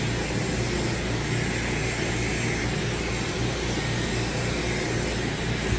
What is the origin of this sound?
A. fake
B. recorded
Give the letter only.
B